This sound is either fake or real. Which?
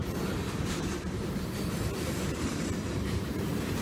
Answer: fake